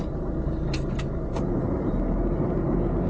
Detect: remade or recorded recorded